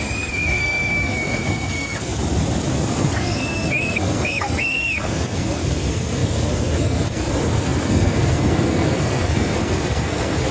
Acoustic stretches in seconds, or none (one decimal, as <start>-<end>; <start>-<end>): 2.1-2.7